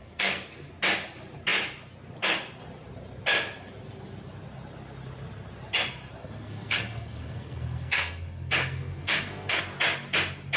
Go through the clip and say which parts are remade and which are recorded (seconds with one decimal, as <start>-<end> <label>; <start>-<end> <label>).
0.0-0.7 remade; 0.7-6.2 recorded; 6.2-9.6 remade; 9.6-10.6 recorded